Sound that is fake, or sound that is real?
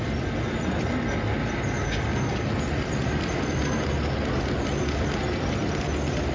real